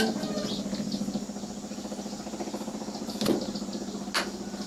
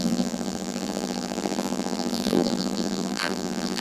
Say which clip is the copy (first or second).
second